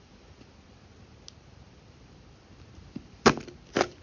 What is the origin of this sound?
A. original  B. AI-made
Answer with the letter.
A